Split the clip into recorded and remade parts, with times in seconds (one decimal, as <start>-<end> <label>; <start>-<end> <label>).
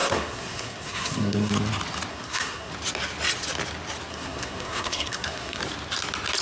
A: 0.0-1.5 remade; 1.5-2.1 recorded; 2.1-2.7 remade; 2.7-4.1 recorded; 4.1-5.6 remade; 5.6-6.4 recorded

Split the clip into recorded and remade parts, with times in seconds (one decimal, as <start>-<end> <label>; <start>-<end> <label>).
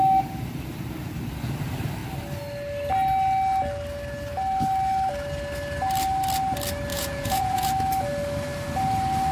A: 0.0-6.9 recorded; 6.9-7.7 remade; 7.7-9.3 recorded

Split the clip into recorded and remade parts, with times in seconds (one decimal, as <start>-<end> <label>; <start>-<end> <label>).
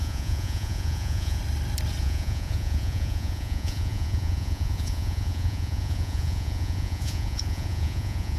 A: 0.0-1.4 remade; 1.4-2.0 recorded; 2.0-8.4 remade